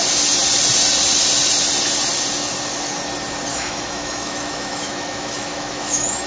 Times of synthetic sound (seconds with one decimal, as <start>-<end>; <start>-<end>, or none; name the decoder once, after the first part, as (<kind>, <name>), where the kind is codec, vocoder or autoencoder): 3.5-6.3 (autoencoder, DAC-VAE)